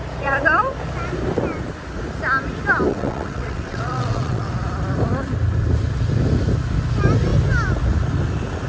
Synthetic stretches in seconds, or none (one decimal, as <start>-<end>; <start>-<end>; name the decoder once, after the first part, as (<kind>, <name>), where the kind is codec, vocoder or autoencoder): 2.9-4.5 (vocoder, WaveNeXt)